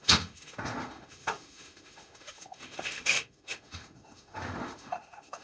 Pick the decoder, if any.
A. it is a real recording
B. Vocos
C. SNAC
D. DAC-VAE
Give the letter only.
D